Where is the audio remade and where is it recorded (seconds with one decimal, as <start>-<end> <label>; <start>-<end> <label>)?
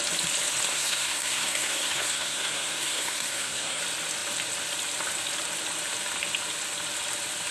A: 0.0-0.7 recorded; 0.7-3.8 remade; 3.8-7.5 recorded